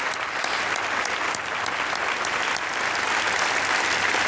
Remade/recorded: recorded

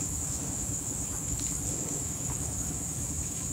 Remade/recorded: remade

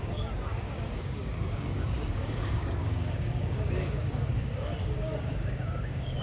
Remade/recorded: remade